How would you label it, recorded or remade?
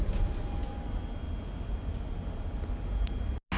recorded